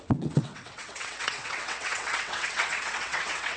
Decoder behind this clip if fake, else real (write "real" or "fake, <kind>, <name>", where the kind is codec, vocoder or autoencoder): fake, vocoder, WaveNeXt